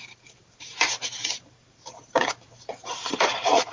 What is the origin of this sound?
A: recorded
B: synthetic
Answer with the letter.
B